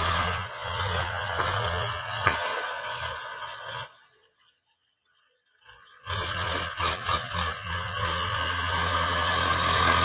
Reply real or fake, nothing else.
fake